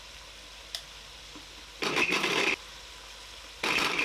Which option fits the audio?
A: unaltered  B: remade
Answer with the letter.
B